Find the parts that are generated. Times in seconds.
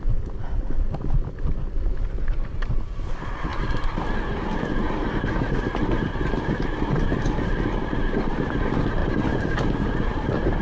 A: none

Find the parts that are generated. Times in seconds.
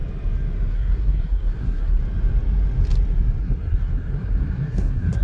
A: 0.7-2.0 (codec, SNAC); 3.4-5.2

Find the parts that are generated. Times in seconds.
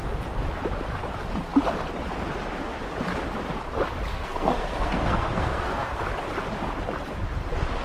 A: 4.1-6.0 (codec, SNAC)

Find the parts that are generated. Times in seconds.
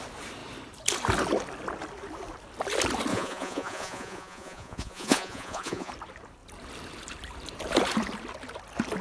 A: 3.1-5.9 (vocoder, Vocos)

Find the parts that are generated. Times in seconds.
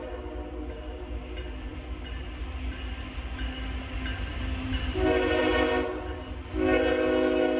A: none